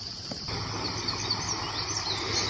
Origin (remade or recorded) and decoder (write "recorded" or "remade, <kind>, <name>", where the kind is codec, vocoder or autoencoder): recorded